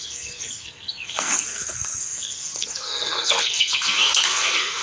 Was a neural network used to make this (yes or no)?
yes